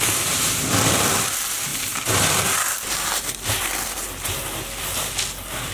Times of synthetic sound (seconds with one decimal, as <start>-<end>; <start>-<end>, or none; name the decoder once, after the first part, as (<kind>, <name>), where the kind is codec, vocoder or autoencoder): none